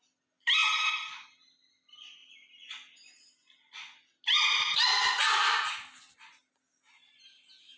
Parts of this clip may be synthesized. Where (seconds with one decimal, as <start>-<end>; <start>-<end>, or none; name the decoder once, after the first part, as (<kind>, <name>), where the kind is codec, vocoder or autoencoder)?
none